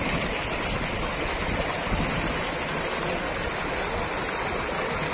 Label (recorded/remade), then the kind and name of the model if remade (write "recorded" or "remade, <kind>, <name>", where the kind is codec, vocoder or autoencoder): recorded